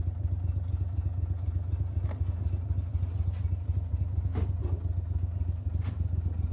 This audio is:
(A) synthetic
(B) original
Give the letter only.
B